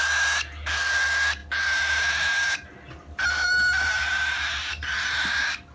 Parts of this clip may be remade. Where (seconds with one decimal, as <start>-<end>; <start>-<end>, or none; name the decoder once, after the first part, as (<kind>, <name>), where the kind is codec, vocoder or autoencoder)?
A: none